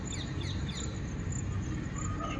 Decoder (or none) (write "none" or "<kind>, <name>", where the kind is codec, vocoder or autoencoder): none